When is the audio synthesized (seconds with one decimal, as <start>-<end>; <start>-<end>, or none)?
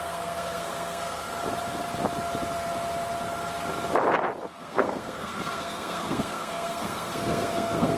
0.0-1.3; 4.5-8.0